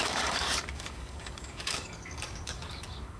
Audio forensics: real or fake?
fake